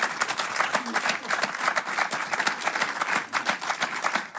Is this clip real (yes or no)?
yes